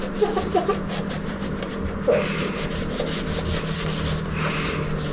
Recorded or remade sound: recorded